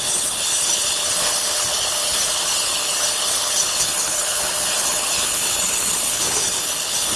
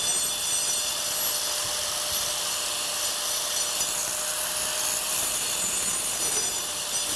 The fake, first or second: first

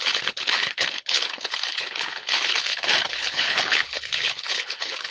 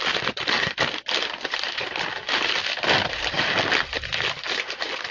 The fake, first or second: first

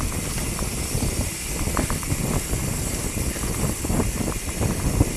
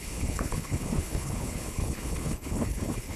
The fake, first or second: second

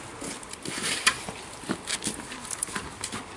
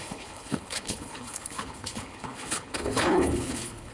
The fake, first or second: second